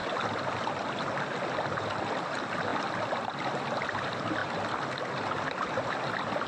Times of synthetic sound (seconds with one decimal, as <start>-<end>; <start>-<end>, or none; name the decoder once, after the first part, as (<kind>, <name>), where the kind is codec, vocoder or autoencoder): none

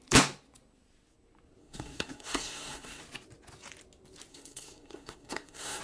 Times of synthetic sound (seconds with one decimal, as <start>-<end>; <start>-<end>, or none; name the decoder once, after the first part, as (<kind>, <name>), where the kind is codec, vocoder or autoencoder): 1.6-3.0 (codec, SNAC); 4.3-5.8

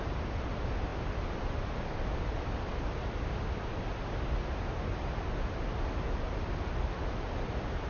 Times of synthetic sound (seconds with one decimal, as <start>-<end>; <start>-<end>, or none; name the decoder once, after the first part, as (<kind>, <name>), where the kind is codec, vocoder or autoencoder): none

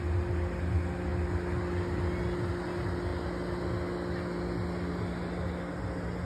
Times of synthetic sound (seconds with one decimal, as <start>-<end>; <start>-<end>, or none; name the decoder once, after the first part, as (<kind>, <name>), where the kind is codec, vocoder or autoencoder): none

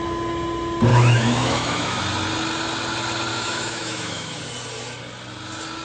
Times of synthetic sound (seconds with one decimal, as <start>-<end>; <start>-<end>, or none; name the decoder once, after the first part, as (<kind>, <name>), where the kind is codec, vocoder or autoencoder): 0.9-2.0 (autoencoder, DAC-VAE); 3.3-4.4

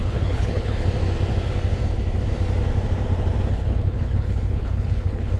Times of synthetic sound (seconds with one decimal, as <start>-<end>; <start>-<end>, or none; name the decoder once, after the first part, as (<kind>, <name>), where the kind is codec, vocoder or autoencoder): 0.0-0.8 (codec, HILCodec); 3.5-5.4

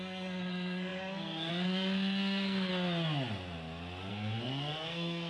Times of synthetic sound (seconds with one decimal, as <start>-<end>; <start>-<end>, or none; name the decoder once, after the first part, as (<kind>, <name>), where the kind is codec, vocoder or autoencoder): 0.0-2.7 (codec, SNAC); 4.1-5.3

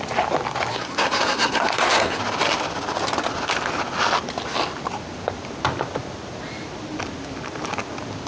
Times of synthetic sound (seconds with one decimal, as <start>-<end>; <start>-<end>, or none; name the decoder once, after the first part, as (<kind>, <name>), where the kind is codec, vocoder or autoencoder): 0.7-2.2 (codec, SNAC)